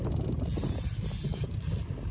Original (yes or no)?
yes